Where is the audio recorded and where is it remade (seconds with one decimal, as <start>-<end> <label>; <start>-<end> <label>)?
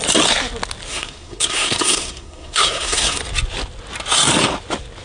0.0-0.9 recorded; 0.9-3.2 remade; 3.2-5.0 recorded